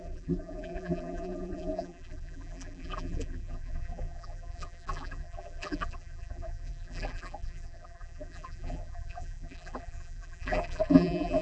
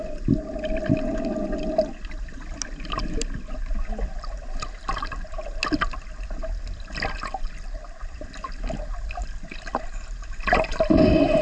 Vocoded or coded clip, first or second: first